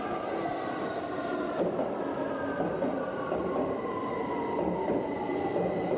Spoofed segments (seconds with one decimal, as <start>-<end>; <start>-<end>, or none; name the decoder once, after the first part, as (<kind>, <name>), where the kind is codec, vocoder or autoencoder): none